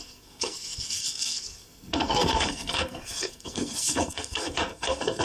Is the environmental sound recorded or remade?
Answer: remade